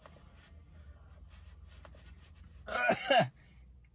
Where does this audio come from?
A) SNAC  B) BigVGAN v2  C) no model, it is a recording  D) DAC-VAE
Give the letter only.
C